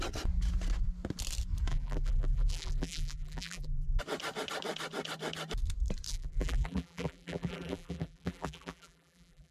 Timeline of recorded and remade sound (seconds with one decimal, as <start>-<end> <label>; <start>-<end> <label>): 0.0-1.7 recorded; 1.7-4.0 remade; 4.0-6.1 recorded; 6.1-9.5 remade